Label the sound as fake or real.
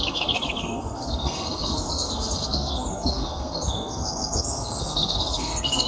fake